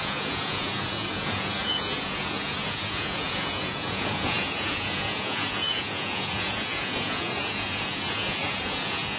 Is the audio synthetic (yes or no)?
yes